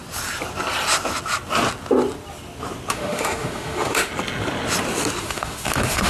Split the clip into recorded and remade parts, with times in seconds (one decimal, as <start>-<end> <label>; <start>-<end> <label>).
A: 0.0-2.9 recorded; 2.9-4.1 remade; 4.1-5.2 recorded; 5.2-6.1 remade